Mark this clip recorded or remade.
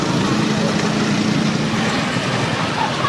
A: recorded